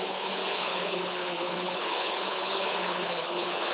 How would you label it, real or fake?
fake